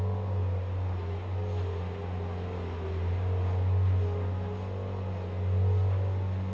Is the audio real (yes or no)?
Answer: yes